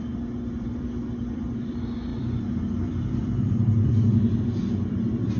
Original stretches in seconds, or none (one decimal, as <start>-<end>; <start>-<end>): none